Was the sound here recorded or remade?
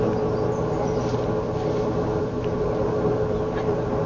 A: recorded